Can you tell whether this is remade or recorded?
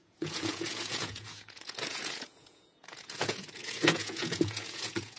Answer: remade